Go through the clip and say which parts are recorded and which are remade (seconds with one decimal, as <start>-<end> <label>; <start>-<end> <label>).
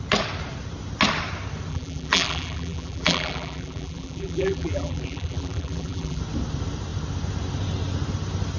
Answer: 0.0-1.7 recorded; 1.7-6.2 remade; 6.2-8.6 recorded